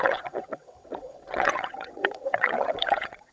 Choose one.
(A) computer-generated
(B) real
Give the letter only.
A